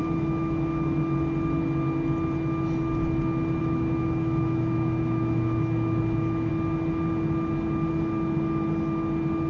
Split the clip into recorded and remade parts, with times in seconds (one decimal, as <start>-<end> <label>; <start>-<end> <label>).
0.0-1.0 remade; 1.0-3.6 recorded; 3.6-6.5 remade; 6.5-9.5 recorded